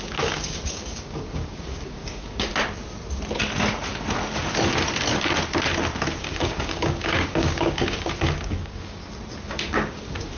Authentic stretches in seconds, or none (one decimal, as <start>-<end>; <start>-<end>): 2.5-6.2; 9.0-9.5